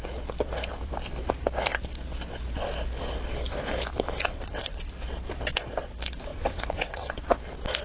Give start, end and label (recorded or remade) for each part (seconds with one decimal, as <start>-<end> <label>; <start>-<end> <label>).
0.0-4.3 recorded; 4.3-4.9 remade; 4.9-6.3 recorded; 6.3-7.2 remade; 7.2-7.8 recorded